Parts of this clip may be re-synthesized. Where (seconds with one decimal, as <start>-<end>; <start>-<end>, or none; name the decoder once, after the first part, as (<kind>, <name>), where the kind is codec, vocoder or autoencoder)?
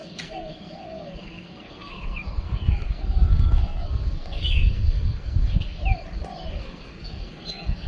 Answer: 0.0-5.8 (codec, SNAC); 6.5-7.9